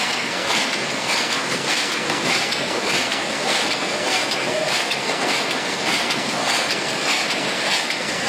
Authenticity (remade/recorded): remade